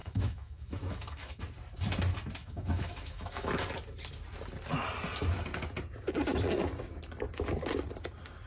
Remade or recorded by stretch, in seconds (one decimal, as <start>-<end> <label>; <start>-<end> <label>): 0.0-1.4 remade; 1.4-2.4 recorded; 2.4-3.5 remade; 3.5-8.5 recorded

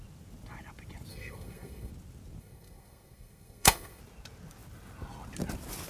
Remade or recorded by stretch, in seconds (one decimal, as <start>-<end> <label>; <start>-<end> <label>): 0.0-1.1 recorded; 1.1-1.9 remade; 1.9-2.4 recorded; 2.4-4.0 remade; 4.0-5.9 recorded